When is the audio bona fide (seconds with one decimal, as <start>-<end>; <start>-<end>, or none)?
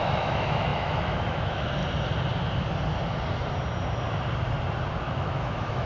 1.8-5.0